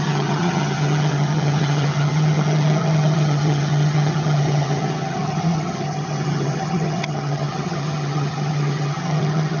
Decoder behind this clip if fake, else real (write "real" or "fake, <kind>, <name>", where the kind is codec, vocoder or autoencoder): fake, vocoder, HiFi-GAN